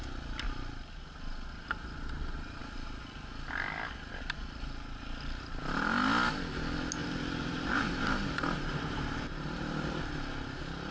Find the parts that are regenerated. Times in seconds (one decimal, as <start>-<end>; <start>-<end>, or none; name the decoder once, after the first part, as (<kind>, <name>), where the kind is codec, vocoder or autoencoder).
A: 7.0-10.0 (vocoder, BigVGAN v2)